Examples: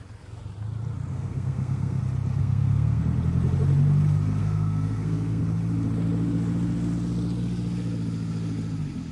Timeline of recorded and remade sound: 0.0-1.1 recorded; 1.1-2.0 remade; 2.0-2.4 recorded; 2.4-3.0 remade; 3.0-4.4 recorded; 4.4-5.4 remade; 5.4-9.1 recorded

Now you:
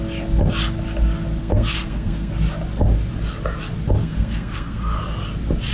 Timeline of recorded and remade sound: 0.0-1.4 recorded; 1.4-2.3 remade; 2.3-4.0 recorded; 4.0-5.0 remade; 5.0-5.7 recorded

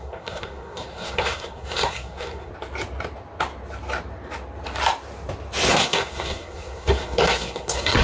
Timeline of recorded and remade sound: 0.0-2.5 remade; 2.5-5.7 recorded; 5.7-8.0 remade